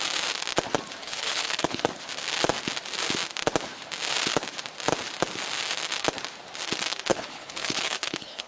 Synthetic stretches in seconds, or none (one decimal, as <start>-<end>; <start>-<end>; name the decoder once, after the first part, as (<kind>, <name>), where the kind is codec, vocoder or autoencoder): 1.0-1.9 (codec, HILCodec); 7.1-8.5